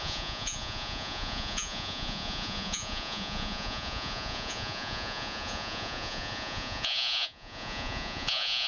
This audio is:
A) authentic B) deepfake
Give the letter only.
B